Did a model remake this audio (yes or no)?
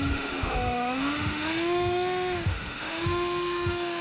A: yes